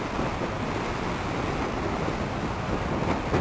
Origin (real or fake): real